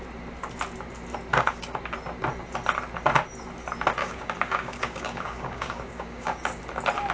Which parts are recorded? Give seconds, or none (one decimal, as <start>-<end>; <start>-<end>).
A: 0.0-1.3; 1.8-4.0; 6.6-7.1